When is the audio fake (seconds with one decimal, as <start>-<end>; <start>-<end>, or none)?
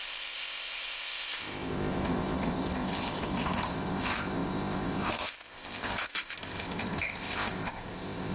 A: 0.0-8.3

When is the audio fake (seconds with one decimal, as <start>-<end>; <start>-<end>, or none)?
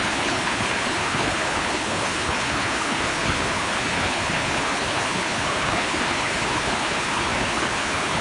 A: 0.0-8.2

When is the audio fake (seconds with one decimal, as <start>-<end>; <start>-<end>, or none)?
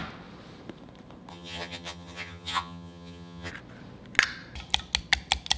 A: 1.3-3.5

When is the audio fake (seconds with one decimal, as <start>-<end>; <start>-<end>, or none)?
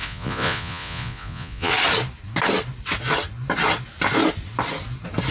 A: 0.0-1.7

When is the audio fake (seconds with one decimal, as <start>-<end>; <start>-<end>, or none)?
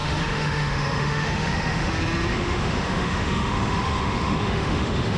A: 0.0-1.9; 2.3-5.2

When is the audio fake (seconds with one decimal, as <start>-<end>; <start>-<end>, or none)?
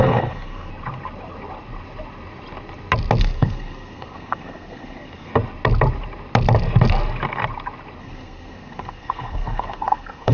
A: 0.0-0.7; 3.2-5.3; 8.0-10.3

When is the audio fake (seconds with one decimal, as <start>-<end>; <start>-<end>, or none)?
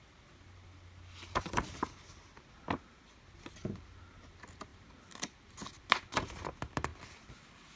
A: none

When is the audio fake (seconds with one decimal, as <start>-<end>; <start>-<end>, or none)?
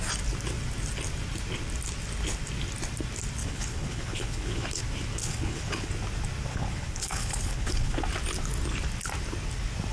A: 3.4-4.8; 5.2-5.9; 6.5-8.0